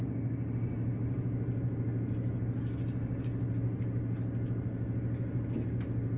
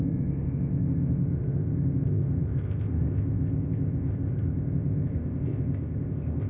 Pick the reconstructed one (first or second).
second